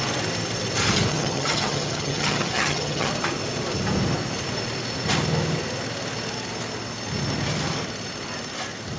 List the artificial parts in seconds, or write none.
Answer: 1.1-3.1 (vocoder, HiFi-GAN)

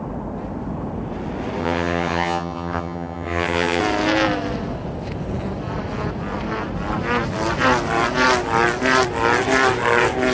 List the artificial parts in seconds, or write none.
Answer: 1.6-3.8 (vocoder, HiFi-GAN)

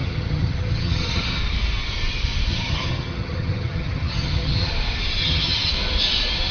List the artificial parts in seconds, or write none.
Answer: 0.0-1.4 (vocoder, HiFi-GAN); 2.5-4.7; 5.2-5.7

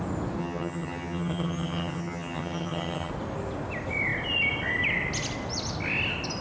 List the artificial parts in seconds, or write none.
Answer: 0.4-3.1 (vocoder, HiFi-GAN)